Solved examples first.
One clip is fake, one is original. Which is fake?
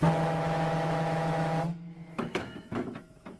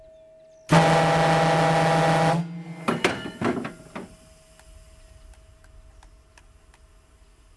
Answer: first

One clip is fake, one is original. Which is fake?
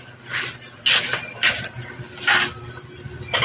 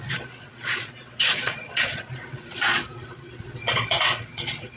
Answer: second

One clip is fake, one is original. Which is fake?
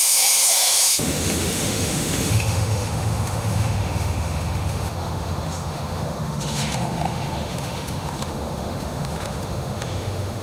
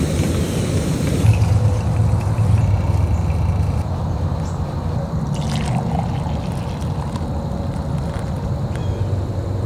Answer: first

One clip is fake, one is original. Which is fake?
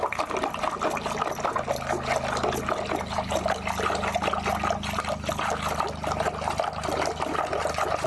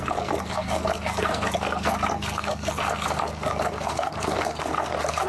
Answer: second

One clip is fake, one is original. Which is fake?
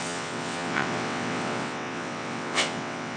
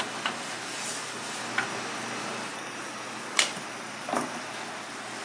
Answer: first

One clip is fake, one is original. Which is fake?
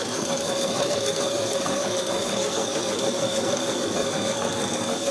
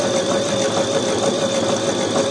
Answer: first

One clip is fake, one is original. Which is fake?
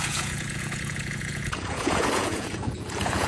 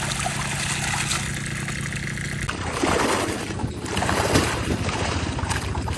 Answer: first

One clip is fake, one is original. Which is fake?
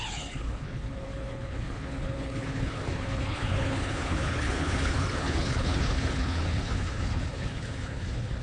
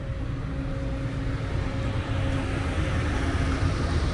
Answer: first